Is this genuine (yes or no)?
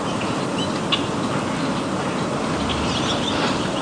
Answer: yes